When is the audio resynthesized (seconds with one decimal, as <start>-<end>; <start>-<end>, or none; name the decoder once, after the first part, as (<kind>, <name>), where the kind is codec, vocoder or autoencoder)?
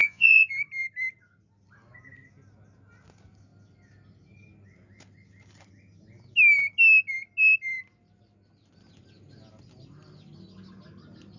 0.0-0.5 (vocoder, Vocos)